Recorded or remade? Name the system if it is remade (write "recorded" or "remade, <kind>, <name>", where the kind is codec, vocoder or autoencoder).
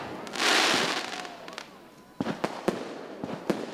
recorded